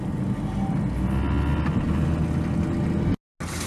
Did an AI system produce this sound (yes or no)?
no